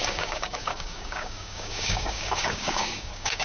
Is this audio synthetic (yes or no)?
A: yes